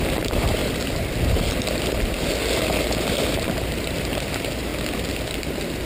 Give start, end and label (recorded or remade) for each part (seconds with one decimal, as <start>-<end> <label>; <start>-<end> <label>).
0.0-0.6 remade; 0.6-3.1 recorded; 3.1-4.7 remade; 4.7-5.9 recorded